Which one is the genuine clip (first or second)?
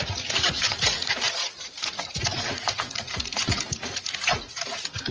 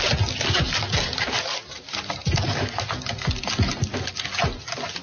second